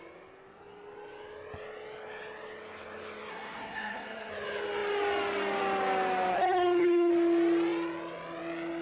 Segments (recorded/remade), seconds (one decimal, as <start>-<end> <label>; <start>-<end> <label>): 0.0-3.3 recorded; 3.3-4.3 remade; 4.3-6.3 recorded; 6.3-7.1 remade; 7.1-8.8 recorded